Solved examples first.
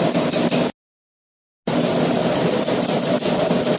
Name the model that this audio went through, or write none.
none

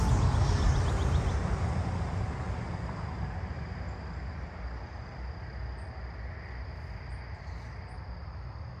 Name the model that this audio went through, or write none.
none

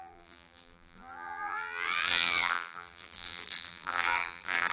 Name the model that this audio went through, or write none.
vocoder, BigVGAN v2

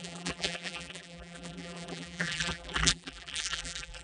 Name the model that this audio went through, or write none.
vocoder, BigVGAN v2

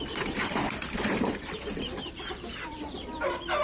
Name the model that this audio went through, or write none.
vocoder, BigVGAN v2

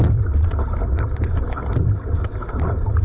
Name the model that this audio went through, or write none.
none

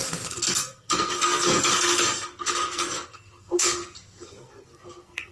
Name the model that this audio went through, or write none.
codec, SNAC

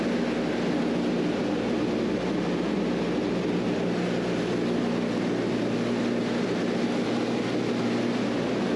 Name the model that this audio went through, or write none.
none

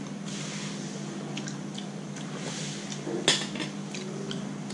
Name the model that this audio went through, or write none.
none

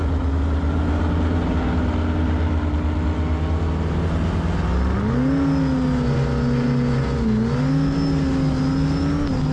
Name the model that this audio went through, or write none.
none